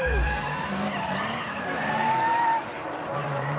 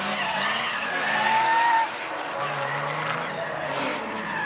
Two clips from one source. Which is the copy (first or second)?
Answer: first